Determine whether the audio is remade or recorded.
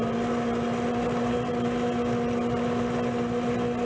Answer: recorded